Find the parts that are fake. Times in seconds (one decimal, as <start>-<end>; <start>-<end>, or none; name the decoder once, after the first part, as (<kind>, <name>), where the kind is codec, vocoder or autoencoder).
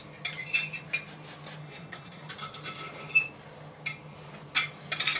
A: 1.6-2.3 (codec, SNAC)